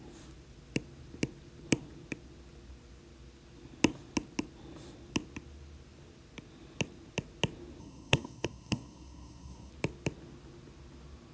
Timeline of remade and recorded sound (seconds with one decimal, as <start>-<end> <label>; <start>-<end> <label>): 0.0-7.8 recorded; 7.8-9.7 remade; 9.7-11.3 recorded

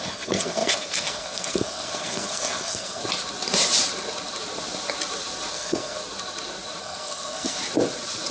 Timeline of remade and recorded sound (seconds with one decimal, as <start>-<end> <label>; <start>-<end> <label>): 0.0-3.0 remade; 3.0-5.5 recorded; 5.5-6.0 remade; 6.0-6.8 recorded; 6.8-7.6 remade; 7.6-8.3 recorded